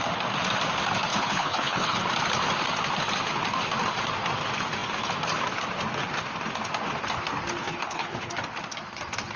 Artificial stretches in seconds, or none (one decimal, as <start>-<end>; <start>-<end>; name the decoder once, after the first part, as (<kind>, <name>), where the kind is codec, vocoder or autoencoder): 1.1-2.0 (codec, HILCodec); 7.6-8.3